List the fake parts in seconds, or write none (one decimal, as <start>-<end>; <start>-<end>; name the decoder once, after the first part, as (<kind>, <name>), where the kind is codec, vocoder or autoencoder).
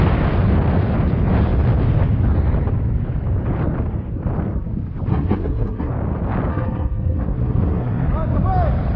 5.1-5.9 (codec, SNAC); 6.5-8.1